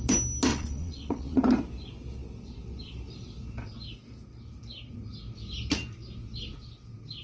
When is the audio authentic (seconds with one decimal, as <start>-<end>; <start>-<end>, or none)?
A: 0.0-0.5; 1.4-7.2

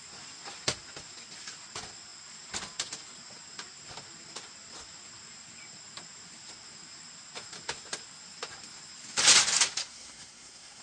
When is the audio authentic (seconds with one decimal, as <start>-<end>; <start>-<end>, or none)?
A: 0.0-9.8

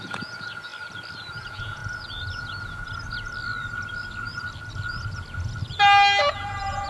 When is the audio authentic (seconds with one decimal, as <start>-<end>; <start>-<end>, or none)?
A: 0.7-1.3; 1.8-2.4; 2.8-6.3

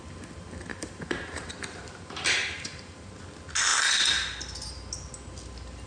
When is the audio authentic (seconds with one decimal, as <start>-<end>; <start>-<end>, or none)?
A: 0.0-0.7; 3.2-5.9

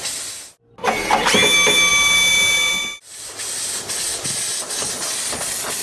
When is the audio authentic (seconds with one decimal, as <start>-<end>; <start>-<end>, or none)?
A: 0.0-5.8